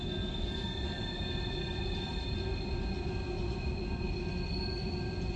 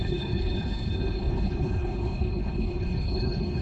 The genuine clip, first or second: first